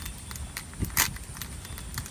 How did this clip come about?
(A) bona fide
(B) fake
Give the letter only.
A